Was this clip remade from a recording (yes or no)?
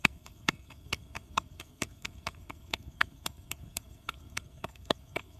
yes